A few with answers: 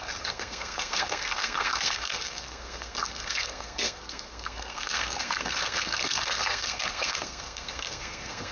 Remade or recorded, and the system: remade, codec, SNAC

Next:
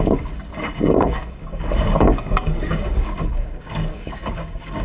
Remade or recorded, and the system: remade, codec, DAC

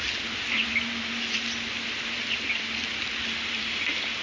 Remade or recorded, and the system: recorded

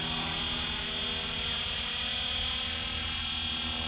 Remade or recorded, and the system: recorded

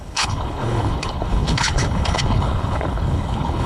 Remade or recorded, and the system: remade, codec, HILCodec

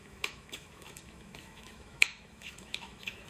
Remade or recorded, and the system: remade, autoencoder, DAC-VAE